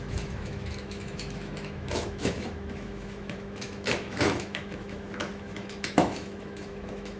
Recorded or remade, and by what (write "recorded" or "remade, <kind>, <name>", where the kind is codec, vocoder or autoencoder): remade, autoencoder, DAC-VAE